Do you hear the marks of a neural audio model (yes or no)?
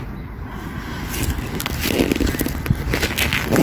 no